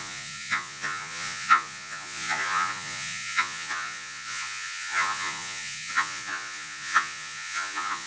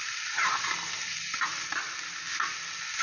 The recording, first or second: second